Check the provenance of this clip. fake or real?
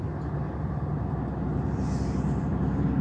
real